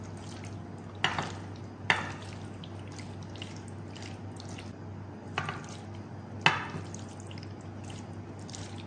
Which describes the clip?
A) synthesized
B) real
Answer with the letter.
B